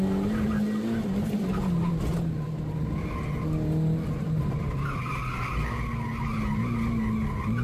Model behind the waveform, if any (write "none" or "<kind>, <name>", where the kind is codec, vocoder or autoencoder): none